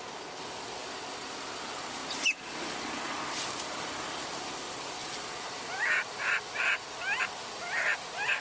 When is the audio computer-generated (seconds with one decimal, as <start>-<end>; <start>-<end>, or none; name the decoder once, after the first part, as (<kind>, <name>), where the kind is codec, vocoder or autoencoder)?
2.0-2.8 (vocoder, BigVGAN v2); 5.0-6.3